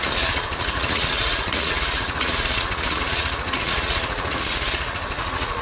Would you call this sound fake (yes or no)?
yes